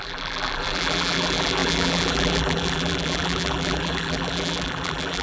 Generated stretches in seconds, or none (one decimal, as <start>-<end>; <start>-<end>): 0.0-5.2